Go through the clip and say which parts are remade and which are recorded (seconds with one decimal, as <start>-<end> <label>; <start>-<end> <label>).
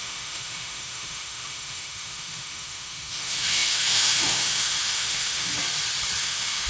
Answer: 0.0-5.5 remade; 5.5-6.2 recorded; 6.2-6.7 remade